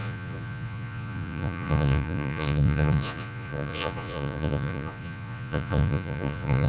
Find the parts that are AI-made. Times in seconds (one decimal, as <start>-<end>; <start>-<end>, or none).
0.0-6.7